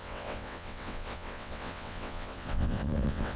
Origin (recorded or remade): remade